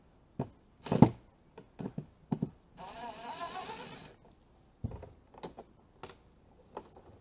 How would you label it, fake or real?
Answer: real